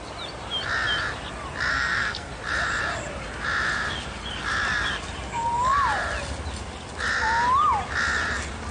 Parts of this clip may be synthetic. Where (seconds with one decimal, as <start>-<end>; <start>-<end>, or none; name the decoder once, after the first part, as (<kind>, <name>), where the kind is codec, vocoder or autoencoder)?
1.7-2.3 (codec, SNAC)